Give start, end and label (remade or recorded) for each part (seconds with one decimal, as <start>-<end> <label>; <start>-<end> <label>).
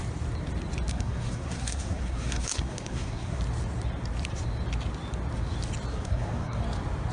0.0-0.9 recorded; 0.9-3.4 remade; 3.4-5.9 recorded; 5.9-6.6 remade; 6.6-7.1 recorded